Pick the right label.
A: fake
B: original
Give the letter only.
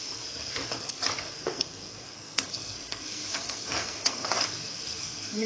A